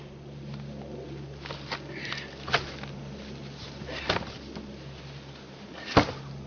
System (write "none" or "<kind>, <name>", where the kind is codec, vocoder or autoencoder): none